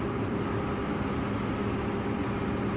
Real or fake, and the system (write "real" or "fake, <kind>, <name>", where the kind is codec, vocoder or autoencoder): real